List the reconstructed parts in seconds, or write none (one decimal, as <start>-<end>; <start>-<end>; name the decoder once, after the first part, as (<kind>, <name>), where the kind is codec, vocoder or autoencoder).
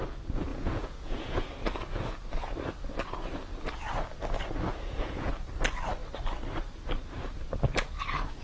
0.5-1.5 (vocoder, Vocos); 4.7-5.3